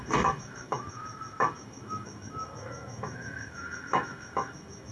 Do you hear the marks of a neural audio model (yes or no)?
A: yes